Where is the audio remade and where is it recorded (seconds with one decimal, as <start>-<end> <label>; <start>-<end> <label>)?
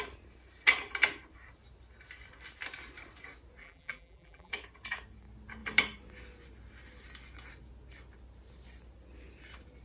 0.0-3.6 recorded; 3.6-4.5 remade; 4.5-9.8 recorded